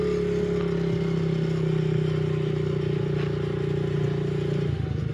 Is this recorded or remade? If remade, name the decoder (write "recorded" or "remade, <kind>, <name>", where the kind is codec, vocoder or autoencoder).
recorded